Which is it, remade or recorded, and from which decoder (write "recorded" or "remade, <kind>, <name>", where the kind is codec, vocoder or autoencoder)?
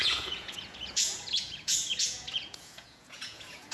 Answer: remade, vocoder, Vocos